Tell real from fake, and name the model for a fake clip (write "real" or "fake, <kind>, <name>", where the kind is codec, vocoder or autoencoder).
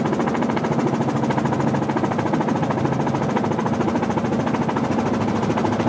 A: real